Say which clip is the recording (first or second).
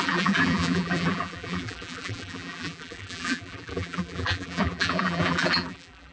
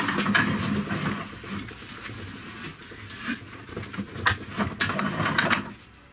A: second